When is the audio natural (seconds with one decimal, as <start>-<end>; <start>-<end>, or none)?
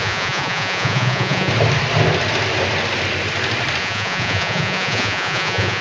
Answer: 1.5-3.8